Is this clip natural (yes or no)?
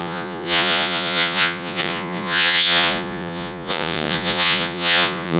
no